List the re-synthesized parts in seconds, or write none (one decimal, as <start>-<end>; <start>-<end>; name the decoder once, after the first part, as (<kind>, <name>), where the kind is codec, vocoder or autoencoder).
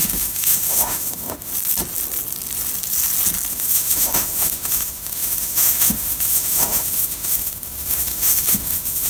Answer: 0.0-1.5 (autoencoder, DAC-VAE); 3.5-9.1